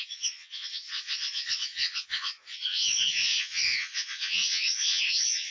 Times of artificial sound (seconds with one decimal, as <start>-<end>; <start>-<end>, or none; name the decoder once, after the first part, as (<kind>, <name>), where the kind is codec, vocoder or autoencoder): 0.0-5.5 (vocoder, Vocos)